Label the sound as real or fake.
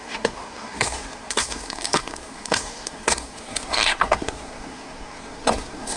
fake